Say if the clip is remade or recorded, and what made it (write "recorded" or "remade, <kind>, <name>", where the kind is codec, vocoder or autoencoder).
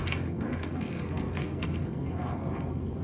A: remade, codec, SNAC